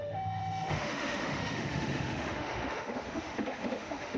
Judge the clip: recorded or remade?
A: remade